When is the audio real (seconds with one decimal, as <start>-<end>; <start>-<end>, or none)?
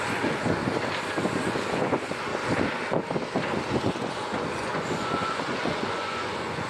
0.6-1.2; 2.3-3.7